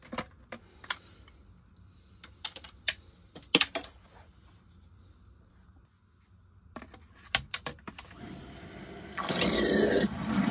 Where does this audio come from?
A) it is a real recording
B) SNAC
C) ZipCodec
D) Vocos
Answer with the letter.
A